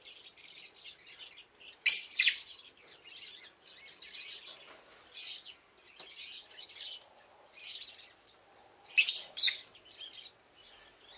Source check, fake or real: real